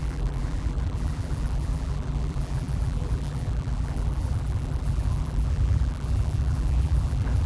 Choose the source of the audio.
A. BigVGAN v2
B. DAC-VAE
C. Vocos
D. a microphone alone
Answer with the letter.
A